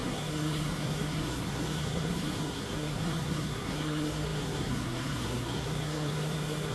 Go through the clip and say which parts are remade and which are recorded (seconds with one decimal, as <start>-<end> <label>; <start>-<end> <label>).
0.0-6.7 remade